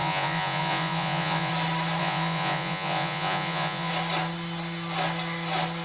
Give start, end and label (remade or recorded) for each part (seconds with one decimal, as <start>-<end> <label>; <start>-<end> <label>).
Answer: 0.0-1.5 remade; 1.5-2.0 recorded; 2.0-3.9 remade; 3.9-5.8 recorded